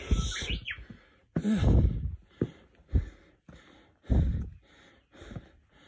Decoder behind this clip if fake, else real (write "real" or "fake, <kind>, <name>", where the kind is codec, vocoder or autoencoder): real